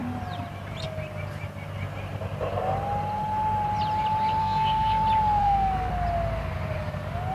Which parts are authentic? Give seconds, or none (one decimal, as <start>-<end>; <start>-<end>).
0.0-4.4; 5.0-5.4; 5.9-7.3